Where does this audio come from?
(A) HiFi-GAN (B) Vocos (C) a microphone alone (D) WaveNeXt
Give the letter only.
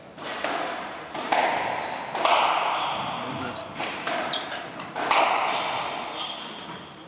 C